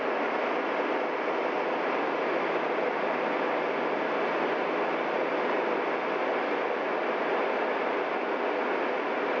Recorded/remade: recorded